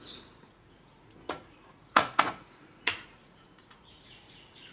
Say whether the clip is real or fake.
fake